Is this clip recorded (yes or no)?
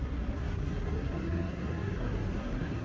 no